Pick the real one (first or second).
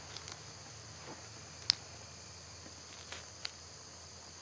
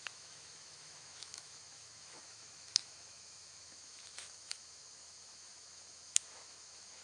first